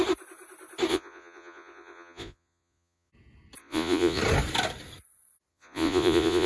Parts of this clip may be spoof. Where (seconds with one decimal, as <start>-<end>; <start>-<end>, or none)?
0.9-3.1; 3.6-4.2; 5.5-6.5